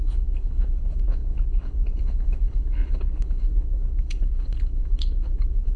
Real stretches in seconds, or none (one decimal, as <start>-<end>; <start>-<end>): none